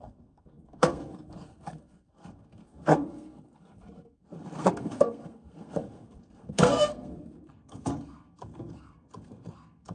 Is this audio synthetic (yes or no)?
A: yes